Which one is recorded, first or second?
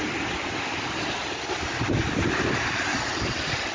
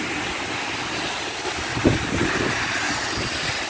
second